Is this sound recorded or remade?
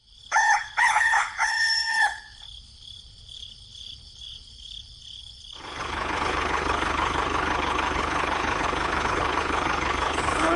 remade